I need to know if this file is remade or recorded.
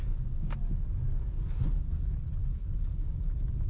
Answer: recorded